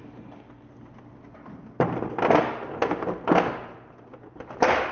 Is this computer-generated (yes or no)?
no